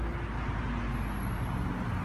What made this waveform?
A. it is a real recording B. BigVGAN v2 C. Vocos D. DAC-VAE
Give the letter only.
A